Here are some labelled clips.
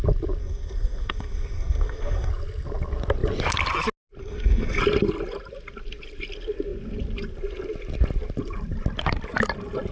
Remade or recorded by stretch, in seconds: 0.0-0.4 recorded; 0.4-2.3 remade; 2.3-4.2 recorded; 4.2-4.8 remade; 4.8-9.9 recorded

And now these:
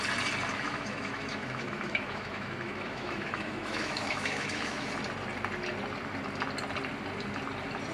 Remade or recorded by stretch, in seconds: 0.0-0.5 recorded; 0.5-4.9 remade; 4.9-7.9 recorded

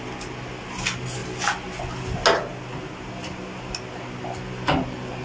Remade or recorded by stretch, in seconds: 0.0-5.2 recorded

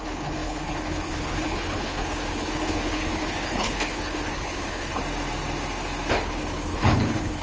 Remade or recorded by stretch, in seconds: 0.0-4.9 remade; 4.9-6.1 recorded; 6.1-7.4 remade

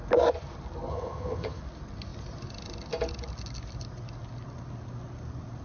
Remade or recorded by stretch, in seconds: 0.0-0.9 recorded; 0.9-1.6 remade; 1.6-5.6 recorded